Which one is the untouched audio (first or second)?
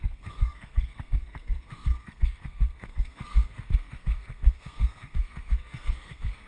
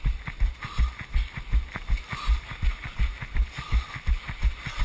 second